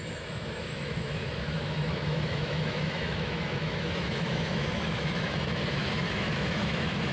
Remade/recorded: remade